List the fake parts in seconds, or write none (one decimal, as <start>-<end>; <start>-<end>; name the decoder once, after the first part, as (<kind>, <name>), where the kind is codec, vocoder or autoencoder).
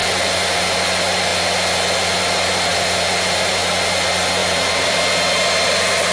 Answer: 0.0-0.6 (vocoder, BigVGAN v2); 4.4-5.0